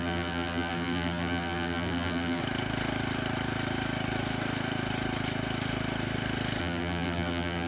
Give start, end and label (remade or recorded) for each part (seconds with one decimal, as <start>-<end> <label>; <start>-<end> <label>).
0.0-2.4 remade; 2.4-6.6 recorded; 6.6-7.7 remade

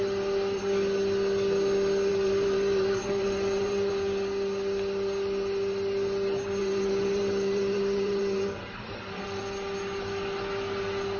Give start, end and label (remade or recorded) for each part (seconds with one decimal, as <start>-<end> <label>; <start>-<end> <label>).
0.0-2.1 recorded; 2.1-3.9 remade; 3.9-6.6 recorded; 6.6-9.4 remade; 9.4-11.2 recorded